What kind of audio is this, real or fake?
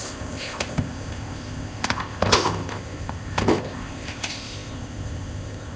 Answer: fake